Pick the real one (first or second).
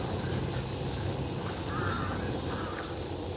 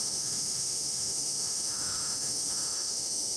first